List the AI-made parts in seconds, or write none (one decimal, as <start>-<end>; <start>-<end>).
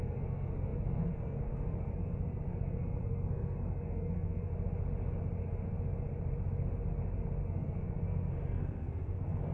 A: 0.0-4.5; 7.4-9.5